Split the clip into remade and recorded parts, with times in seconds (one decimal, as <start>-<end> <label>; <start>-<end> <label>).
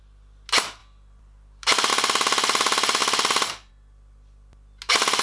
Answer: 0.0-0.8 recorded; 0.8-1.9 remade; 1.9-3.0 recorded; 3.0-3.7 remade; 3.7-5.2 recorded